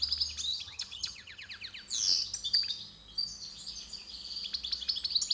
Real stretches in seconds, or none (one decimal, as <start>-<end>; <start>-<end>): 0.0-0.5; 1.5-5.3